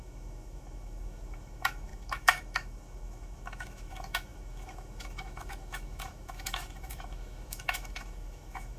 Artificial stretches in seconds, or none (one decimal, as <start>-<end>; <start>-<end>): 0.0-8.8